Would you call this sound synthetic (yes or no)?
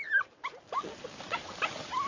yes